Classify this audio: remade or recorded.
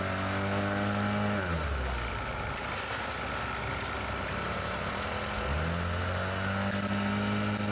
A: recorded